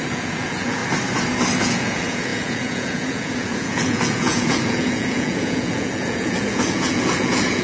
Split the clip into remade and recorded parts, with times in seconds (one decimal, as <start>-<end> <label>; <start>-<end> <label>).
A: 0.0-0.8 remade; 0.8-1.6 recorded; 1.6-7.6 remade